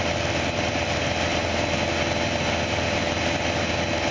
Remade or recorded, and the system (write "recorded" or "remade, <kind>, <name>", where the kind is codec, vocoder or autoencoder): recorded